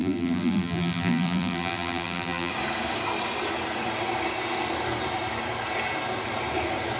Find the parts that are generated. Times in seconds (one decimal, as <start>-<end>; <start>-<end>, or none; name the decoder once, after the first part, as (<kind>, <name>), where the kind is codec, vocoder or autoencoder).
0.0-2.5 (vocoder, BigVGAN v2)

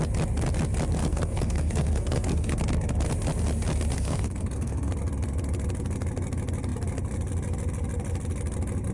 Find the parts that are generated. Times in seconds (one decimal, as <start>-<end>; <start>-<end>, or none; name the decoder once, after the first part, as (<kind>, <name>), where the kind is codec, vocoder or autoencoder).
1.0-2.6 (codec, SNAC); 3.9-4.9